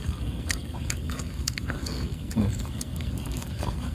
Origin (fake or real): fake